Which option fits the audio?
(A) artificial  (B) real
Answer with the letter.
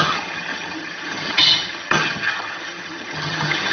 A